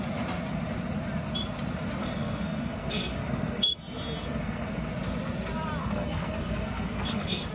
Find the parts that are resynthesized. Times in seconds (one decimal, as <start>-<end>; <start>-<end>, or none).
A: 2.0-3.8; 4.2-4.9; 5.8-7.5